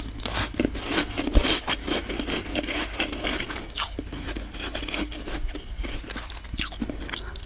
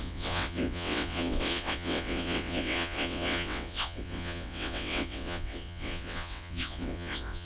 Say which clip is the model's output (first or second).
second